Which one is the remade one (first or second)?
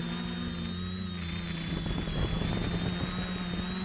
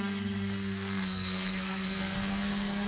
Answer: second